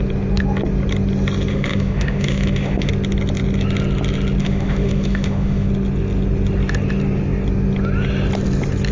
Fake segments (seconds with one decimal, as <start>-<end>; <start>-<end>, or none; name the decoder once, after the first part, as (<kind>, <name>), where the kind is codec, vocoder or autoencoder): 1.5-2.9 (autoencoder, DAC-VAE); 4.4-5.7